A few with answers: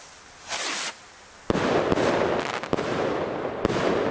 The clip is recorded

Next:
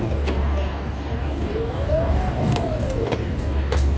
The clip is remade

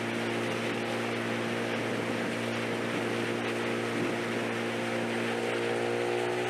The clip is recorded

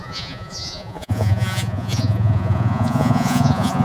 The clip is remade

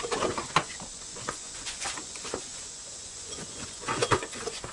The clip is remade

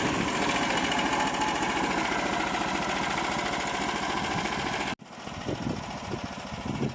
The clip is recorded